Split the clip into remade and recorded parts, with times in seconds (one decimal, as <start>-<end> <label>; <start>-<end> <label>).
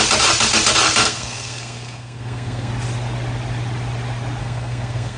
0.0-1.0 recorded; 1.0-2.7 remade; 2.7-4.4 recorded; 4.4-5.2 remade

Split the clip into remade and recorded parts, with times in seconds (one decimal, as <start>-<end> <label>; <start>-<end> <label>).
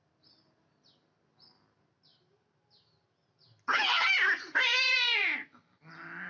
0.0-6.3 recorded